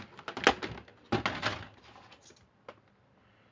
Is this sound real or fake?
real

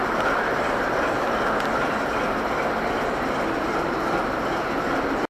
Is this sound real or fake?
real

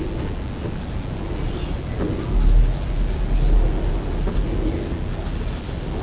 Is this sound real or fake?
real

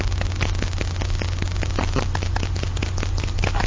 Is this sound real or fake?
real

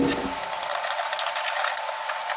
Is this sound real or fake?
real